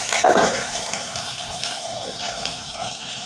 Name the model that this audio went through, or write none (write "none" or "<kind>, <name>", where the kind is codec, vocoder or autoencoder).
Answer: codec, SNAC